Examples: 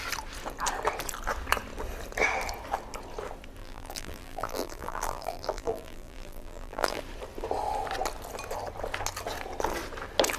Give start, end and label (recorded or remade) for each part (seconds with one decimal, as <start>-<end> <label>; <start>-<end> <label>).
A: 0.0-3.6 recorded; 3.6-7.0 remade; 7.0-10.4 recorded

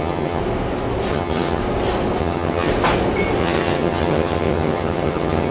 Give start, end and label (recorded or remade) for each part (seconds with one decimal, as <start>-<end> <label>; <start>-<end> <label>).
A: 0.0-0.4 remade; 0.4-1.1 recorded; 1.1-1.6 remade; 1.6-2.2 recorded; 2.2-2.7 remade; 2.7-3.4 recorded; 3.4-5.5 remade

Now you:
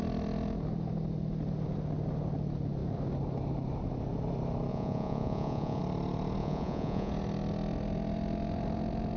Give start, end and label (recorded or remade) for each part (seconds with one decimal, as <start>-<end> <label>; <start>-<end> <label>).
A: 0.0-4.7 recorded; 4.7-5.8 remade; 5.8-6.4 recorded; 6.4-7.1 remade; 7.1-9.2 recorded